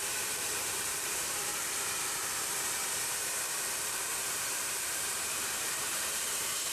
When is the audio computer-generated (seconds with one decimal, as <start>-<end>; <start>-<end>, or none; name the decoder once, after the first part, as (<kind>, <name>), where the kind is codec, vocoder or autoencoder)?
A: 0.0-1.5 (vocoder, BigVGAN v2); 3.2-6.7